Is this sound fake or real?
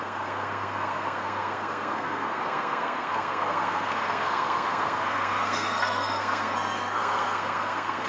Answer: fake